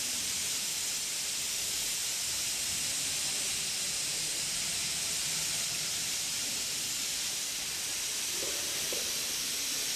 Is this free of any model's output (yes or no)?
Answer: yes